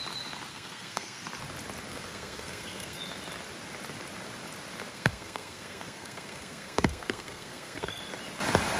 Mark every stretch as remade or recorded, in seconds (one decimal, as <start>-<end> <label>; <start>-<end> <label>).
0.0-0.5 recorded; 0.5-1.2 remade; 1.2-1.9 recorded; 1.9-3.0 remade; 3.0-4.9 recorded; 4.9-8.0 remade; 8.0-8.8 recorded